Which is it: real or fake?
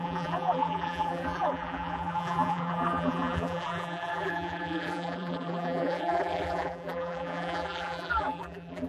fake